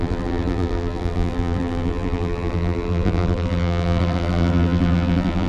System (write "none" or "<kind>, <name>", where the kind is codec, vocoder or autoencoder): vocoder, BigVGAN v2